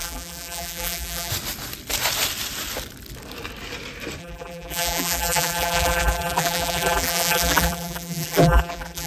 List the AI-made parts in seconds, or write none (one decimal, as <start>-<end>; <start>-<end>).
0.0-1.3; 4.2-9.1